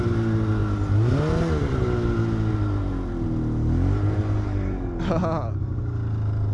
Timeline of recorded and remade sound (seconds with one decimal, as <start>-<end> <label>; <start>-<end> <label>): 0.0-6.5 recorded

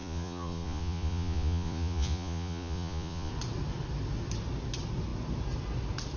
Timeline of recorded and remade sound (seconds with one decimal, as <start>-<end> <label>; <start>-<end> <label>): 0.0-3.3 remade; 3.3-6.2 recorded

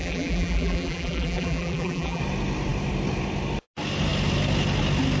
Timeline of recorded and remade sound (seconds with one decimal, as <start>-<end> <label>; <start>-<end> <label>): 0.0-2.2 remade; 2.2-5.2 recorded

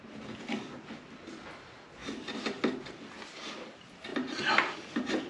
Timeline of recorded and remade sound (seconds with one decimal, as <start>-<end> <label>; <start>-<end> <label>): 0.0-5.3 recorded

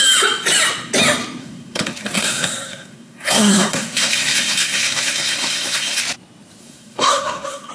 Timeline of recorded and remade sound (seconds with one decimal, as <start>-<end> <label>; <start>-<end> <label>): 0.0-1.4 recorded; 1.4-6.0 remade; 6.0-6.6 recorded; 6.6-7.7 remade